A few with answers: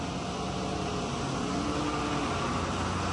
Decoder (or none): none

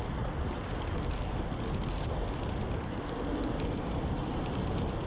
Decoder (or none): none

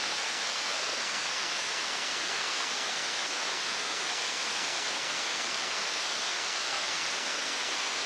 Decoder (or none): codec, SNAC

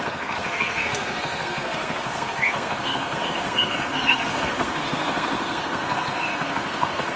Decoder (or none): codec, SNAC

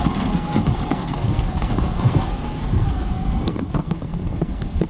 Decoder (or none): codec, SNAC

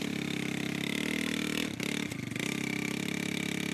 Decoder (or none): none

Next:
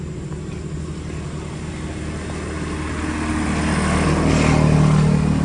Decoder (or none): none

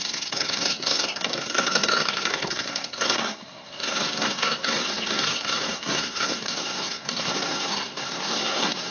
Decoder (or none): codec, SNAC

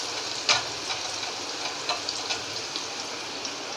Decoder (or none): none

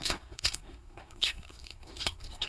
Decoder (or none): codec, SNAC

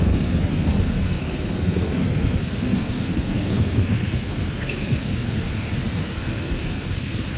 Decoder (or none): codec, SNAC